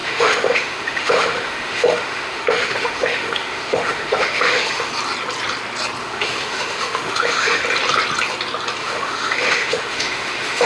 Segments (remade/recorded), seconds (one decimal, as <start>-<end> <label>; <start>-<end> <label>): 0.0-4.9 remade; 4.9-6.0 recorded; 6.0-7.6 remade; 7.6-8.8 recorded; 8.8-10.7 remade

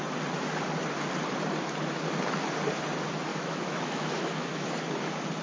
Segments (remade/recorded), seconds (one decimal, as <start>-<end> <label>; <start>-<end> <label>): 0.0-3.3 recorded; 3.3-4.7 remade; 4.7-5.4 recorded